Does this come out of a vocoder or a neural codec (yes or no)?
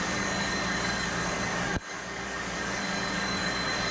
yes